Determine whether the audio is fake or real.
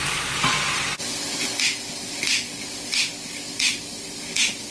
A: real